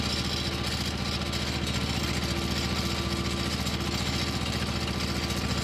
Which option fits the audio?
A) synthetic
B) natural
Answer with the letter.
B